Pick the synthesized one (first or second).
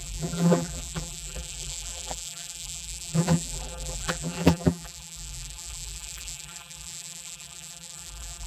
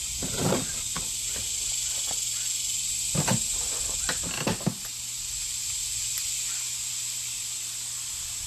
first